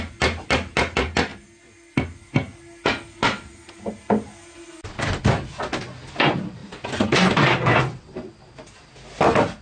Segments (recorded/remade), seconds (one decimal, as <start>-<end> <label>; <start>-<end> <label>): 0.0-9.6 recorded